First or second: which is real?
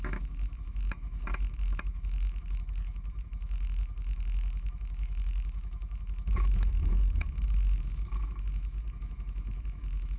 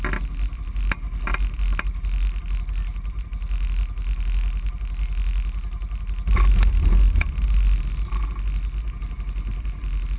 second